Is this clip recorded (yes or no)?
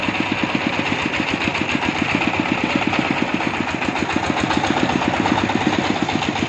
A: yes